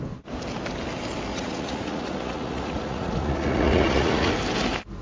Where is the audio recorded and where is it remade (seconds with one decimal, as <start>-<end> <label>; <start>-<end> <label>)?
0.0-1.3 recorded; 1.3-4.3 remade; 4.3-5.0 recorded